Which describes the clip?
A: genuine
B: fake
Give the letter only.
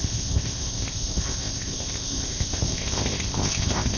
B